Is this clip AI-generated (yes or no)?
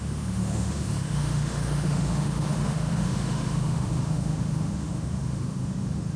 yes